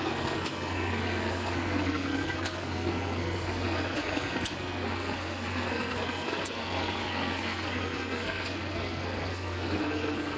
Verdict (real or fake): fake